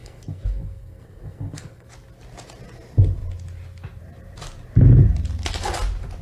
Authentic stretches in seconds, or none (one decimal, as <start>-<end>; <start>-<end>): 1.9-6.2